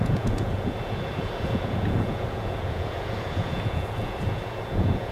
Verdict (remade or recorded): remade